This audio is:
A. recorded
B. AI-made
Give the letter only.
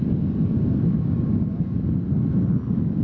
A